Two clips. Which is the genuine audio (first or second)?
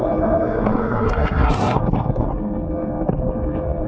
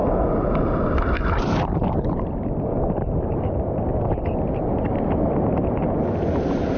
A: second